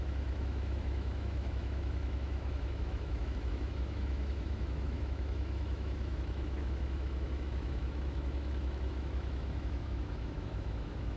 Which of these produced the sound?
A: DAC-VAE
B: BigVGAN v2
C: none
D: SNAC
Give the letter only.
A